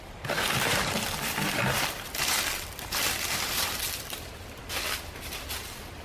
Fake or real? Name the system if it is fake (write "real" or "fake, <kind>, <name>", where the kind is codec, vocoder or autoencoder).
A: real